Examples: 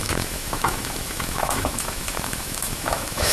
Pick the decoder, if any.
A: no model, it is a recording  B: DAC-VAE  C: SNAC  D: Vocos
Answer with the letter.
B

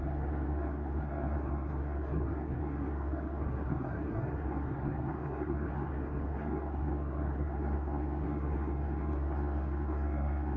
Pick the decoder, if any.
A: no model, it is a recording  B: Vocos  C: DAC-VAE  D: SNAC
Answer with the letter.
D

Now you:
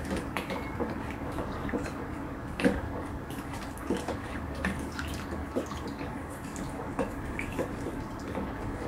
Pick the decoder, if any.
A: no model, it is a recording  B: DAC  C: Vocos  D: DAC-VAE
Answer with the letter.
B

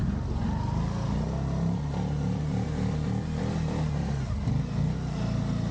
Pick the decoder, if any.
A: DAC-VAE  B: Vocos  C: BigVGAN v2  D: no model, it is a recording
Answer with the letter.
D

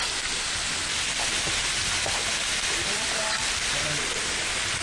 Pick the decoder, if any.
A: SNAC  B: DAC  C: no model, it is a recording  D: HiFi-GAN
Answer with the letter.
C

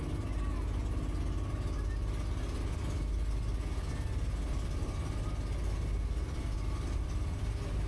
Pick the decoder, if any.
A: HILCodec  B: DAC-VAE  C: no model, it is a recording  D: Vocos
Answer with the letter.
C